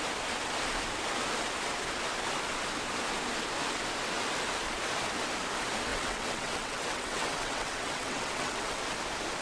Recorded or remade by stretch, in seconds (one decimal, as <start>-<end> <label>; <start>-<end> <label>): 0.0-5.9 recorded; 5.9-8.8 remade; 8.8-9.4 recorded